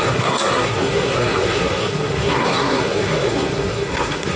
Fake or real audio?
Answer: fake